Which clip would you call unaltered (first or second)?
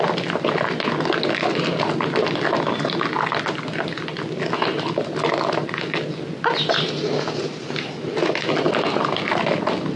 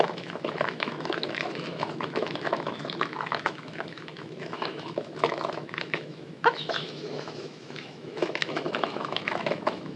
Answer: first